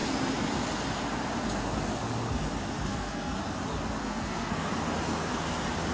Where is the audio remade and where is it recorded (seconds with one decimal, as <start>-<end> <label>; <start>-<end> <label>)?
0.0-2.9 recorded; 2.9-3.4 remade; 3.4-4.0 recorded; 4.0-4.7 remade; 4.7-5.9 recorded